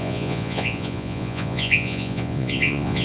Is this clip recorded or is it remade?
remade